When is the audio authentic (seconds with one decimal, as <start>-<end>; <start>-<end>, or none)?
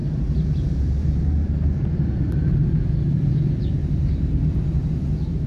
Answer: none